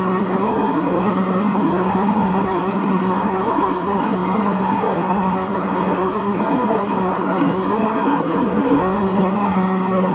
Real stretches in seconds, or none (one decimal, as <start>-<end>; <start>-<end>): none